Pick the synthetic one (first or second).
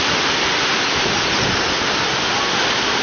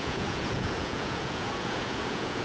second